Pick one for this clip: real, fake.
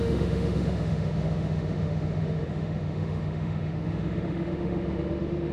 fake